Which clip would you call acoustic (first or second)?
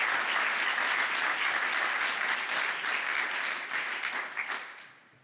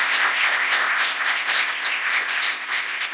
first